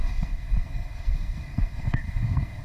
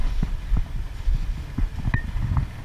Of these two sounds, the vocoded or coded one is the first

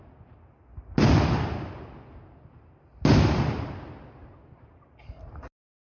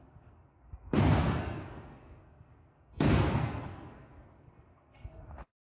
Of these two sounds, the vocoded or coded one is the second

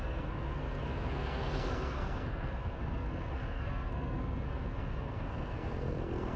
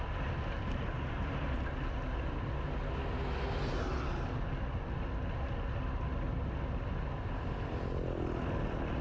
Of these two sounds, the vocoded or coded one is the first